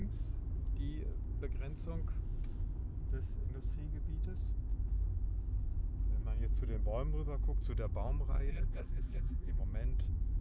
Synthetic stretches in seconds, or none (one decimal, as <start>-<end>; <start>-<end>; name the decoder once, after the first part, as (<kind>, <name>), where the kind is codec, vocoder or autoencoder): 8.5-9.6 (vocoder, BigVGAN v2)